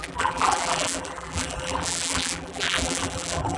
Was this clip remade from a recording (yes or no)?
yes